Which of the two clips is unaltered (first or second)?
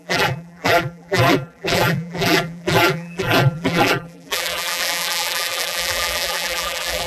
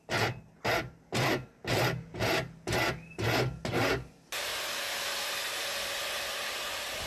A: second